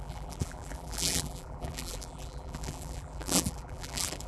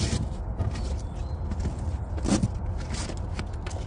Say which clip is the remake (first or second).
first